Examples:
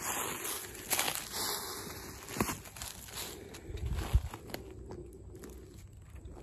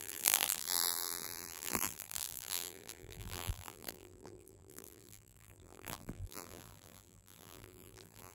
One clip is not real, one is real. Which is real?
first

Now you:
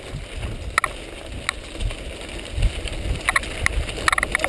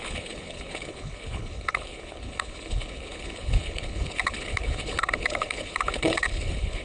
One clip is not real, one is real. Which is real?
first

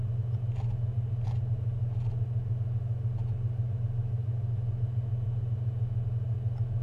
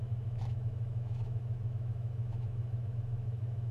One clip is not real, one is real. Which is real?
first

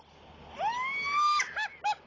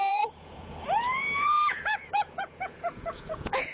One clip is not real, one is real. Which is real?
first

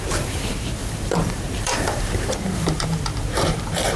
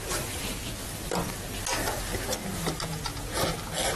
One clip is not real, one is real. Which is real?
second